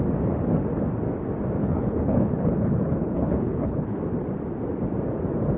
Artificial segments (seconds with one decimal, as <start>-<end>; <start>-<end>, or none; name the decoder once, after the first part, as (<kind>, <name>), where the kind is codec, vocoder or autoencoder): 1.6-4.0 (codec, HILCodec)

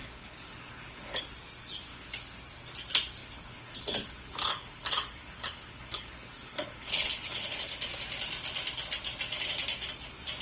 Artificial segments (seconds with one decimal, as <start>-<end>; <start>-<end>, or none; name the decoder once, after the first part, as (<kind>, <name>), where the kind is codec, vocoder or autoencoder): 0.0-1.2 (codec, HILCodec); 1.9-2.4; 3.2-7.9

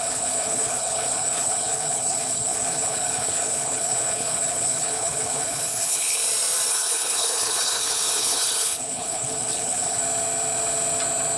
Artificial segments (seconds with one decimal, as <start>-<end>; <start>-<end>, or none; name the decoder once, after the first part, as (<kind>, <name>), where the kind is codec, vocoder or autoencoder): 0.0-6.2 (codec, HILCodec); 6.7-10.0

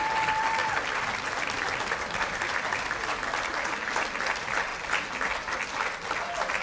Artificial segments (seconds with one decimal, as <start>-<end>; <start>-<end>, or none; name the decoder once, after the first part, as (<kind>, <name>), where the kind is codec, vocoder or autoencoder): none

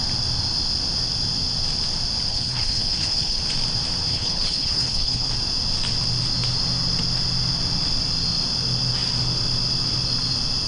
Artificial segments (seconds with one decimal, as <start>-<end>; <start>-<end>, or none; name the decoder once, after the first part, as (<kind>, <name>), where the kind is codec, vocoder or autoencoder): 2.3-3.4 (codec, HILCodec); 4.1-5.3

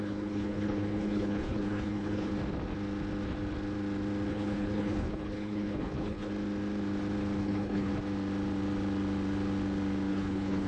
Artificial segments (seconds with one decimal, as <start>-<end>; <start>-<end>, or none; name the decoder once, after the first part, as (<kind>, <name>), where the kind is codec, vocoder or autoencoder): 0.0-2.3 (codec, HILCodec); 4.3-6.3; 7.4-7.9; 10.1-10.7

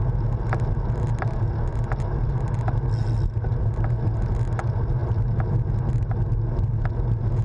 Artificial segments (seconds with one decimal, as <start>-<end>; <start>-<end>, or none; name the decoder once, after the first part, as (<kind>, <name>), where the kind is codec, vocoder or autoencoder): none

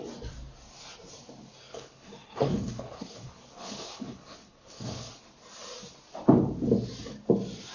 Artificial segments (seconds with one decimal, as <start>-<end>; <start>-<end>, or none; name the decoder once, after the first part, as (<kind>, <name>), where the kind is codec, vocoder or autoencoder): 1.7-5.1 (codec, HILCodec)